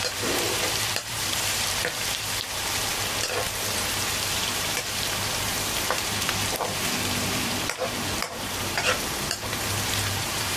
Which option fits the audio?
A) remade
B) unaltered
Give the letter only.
A